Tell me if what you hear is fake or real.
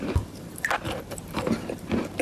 fake